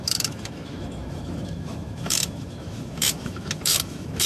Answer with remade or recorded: remade